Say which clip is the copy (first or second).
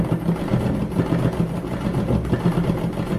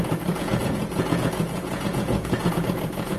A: second